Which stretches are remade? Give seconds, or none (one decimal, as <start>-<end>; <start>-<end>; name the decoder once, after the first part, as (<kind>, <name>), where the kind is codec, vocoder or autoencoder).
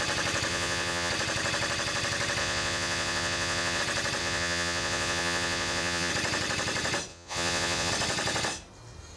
0.5-1.1 (vocoder, Vocos); 2.4-3.8; 4.2-6.1; 7.1-7.9